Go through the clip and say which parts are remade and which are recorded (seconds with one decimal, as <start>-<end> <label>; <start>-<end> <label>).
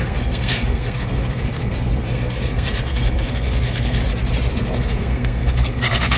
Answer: 0.0-4.0 remade; 4.0-4.5 recorded; 4.5-6.2 remade